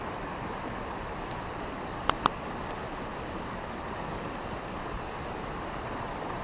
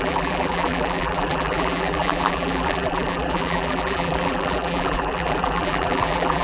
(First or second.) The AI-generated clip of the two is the second